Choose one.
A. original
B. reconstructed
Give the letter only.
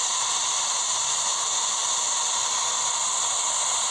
A